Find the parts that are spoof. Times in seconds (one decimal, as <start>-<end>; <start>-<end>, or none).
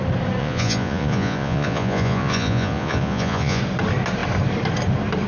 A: 0.4-3.6